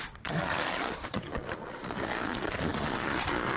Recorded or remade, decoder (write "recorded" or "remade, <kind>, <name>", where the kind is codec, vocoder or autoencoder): remade, vocoder, Vocos